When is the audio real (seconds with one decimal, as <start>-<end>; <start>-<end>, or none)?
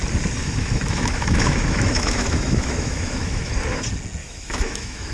0.0-0.4; 3.5-4.2